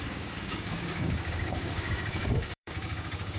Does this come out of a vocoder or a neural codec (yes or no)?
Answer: yes